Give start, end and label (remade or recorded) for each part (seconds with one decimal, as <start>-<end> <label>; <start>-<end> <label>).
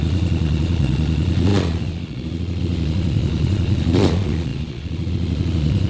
0.0-5.9 remade